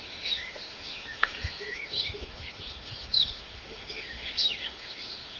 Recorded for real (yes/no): no